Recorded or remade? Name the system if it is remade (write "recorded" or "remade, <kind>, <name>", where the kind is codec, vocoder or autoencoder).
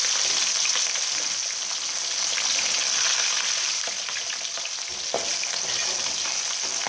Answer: recorded